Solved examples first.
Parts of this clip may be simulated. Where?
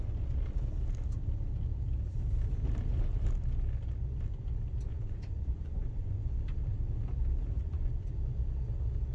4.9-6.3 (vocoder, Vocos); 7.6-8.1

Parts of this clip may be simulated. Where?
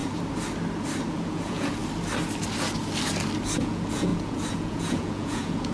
1.1-1.8 (vocoder, Vocos); 3.6-5.7